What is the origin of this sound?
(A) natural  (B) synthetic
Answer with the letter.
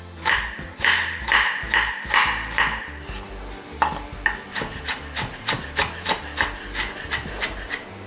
A